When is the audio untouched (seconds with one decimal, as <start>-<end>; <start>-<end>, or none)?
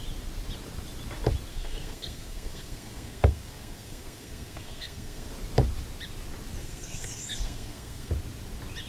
0.0-1.5; 5.3-6.6; 8.1-8.9